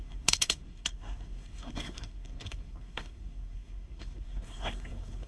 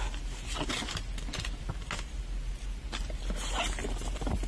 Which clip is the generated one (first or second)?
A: first